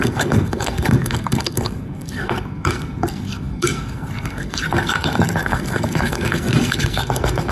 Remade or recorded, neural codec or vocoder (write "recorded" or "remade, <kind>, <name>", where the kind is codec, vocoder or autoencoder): remade, codec, SNAC